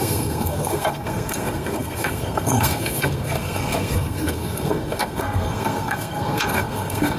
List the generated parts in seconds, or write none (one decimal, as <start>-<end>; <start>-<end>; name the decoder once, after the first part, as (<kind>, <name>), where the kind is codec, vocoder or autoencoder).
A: 0.0-7.2 (codec, SNAC)